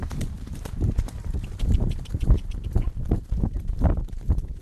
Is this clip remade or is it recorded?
remade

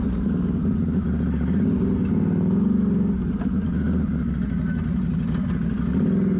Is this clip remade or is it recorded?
recorded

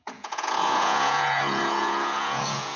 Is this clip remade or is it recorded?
remade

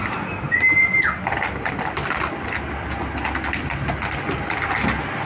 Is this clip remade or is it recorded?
recorded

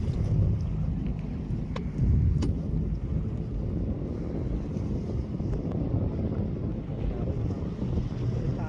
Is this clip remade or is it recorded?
recorded